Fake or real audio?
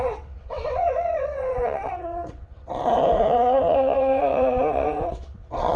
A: fake